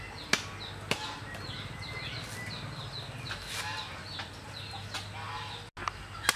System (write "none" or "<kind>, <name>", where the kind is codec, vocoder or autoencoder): none